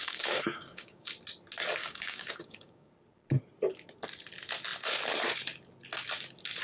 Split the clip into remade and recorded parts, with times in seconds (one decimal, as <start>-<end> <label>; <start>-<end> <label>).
0.0-1.1 remade; 1.1-1.8 recorded; 1.8-2.9 remade; 2.9-6.6 recorded